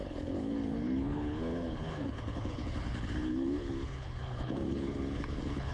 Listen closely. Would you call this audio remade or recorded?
remade